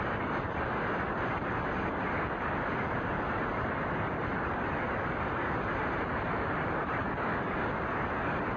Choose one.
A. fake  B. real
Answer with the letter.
B